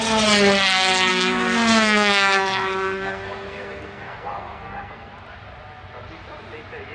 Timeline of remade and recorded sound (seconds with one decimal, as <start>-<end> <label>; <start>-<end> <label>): 0.0-1.1 recorded; 1.1-5.1 remade; 5.1-6.9 recorded